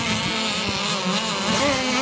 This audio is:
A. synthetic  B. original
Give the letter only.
B